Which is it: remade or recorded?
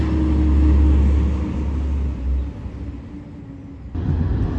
recorded